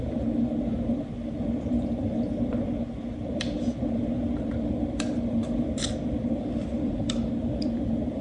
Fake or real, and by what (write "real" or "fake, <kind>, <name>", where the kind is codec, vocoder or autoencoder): fake, vocoder, BigVGAN v2